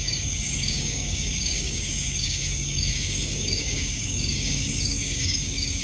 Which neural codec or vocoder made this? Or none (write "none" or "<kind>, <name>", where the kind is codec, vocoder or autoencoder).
codec, DAC